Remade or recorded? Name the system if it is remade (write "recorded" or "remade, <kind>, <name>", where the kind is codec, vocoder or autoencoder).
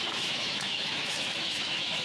remade, autoencoder, DAC-VAE